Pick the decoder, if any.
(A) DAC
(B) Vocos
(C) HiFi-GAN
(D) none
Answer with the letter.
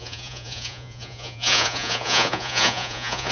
B